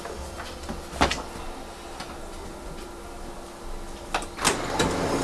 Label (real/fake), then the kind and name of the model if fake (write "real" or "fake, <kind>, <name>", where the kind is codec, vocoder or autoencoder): real